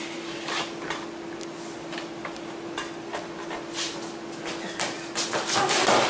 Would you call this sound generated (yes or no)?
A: no